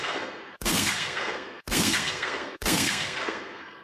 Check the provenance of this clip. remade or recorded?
remade